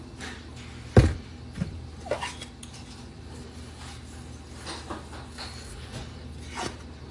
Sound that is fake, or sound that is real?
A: real